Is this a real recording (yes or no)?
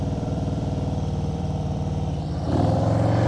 no